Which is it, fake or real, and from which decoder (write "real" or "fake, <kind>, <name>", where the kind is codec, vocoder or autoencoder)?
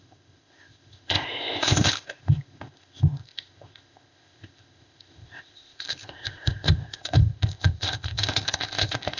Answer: fake, codec, ZipCodec